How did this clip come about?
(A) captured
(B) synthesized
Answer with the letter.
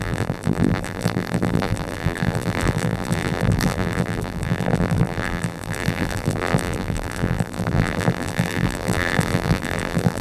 B